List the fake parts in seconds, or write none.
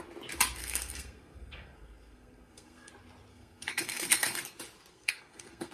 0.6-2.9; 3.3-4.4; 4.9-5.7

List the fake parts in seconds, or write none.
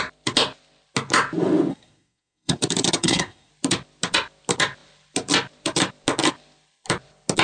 1.7-2.6; 3.0-3.5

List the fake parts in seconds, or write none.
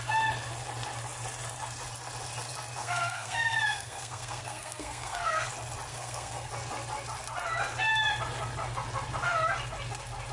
2.8-5.5; 5.9-6.5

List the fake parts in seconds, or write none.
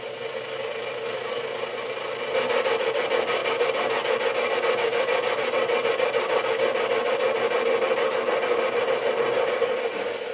none